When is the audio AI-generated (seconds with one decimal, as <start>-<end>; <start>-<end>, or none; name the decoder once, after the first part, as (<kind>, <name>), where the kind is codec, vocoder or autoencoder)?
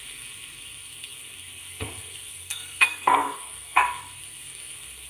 0.0-5.1 (codec, SNAC)